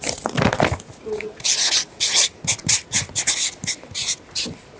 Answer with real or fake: real